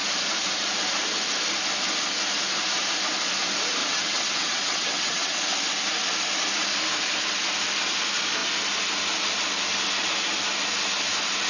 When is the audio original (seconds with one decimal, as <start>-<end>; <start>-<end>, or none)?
0.0-3.8; 5.4-11.5